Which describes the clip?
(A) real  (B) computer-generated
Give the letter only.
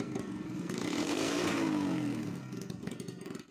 B